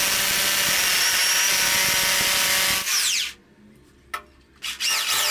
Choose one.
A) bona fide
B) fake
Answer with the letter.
A